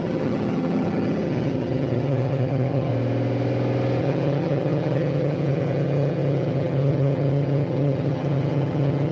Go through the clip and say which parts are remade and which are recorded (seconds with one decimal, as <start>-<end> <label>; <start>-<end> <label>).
0.0-2.9 remade; 2.9-4.0 recorded; 4.0-9.1 remade